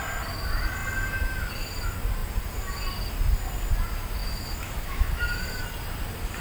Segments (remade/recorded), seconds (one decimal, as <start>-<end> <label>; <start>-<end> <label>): 0.0-4.2 recorded; 4.2-5.2 remade; 5.2-6.4 recorded